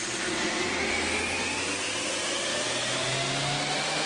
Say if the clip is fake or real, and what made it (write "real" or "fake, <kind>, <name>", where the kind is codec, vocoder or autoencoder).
real